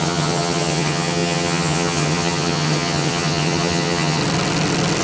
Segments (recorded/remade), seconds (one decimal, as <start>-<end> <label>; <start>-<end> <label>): 0.0-4.2 remade; 4.2-5.0 recorded